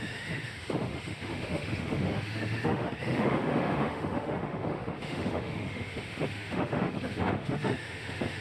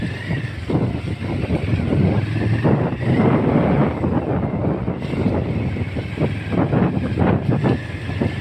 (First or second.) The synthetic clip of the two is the first